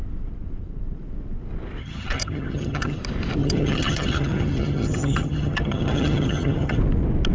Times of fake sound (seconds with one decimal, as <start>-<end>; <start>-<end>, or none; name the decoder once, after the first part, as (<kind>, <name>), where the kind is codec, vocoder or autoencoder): 1.8-3.0 (vocoder, HiFi-GAN); 3.4-6.8